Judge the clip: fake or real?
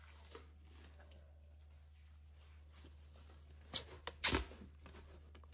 real